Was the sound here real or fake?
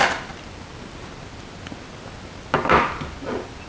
real